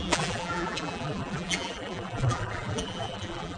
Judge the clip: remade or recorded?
remade